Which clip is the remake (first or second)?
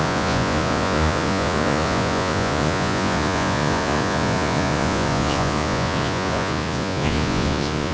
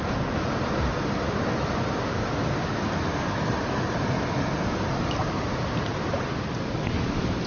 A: first